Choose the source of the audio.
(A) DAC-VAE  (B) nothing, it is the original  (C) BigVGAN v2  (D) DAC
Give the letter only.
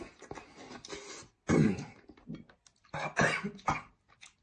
B